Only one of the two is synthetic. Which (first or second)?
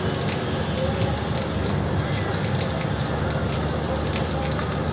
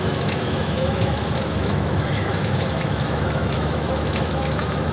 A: second